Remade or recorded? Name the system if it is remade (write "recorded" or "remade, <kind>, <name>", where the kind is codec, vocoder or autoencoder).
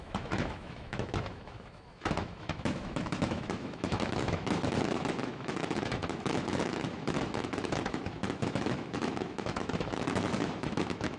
remade, autoencoder, DAC-VAE